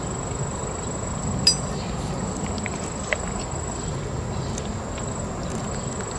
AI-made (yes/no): no